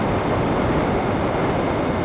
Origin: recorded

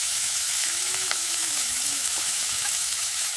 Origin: remade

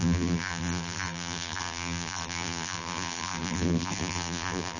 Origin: remade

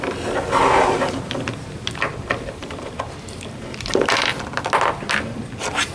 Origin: recorded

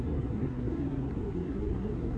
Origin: remade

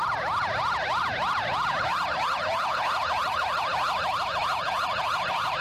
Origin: remade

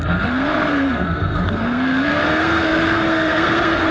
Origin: remade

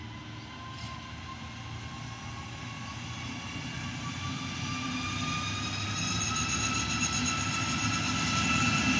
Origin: recorded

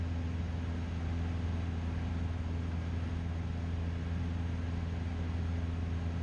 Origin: recorded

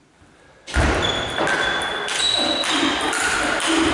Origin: recorded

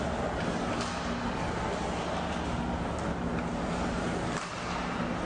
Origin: recorded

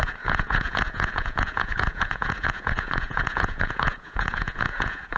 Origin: remade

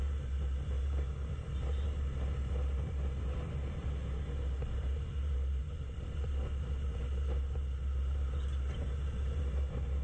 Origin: recorded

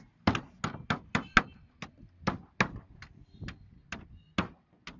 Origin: recorded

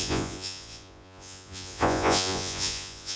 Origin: remade